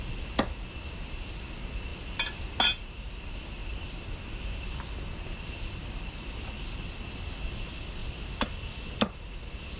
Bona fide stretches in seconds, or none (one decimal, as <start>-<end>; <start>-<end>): 0.0-1.9; 2.4-3.6; 6.5-8.0; 8.5-9.8